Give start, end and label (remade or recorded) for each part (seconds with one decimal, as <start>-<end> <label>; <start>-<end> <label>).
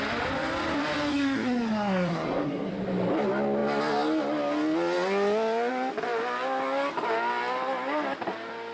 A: 0.0-1.1 recorded; 1.1-2.7 remade; 2.7-8.7 recorded